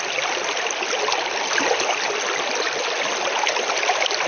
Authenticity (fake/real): real